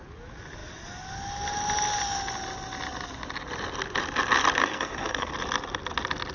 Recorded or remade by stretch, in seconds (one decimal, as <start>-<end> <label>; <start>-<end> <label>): 0.0-4.6 recorded; 4.6-5.3 remade; 5.3-6.3 recorded